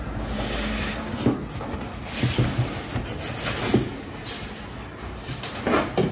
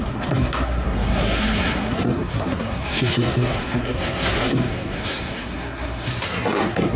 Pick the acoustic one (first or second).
first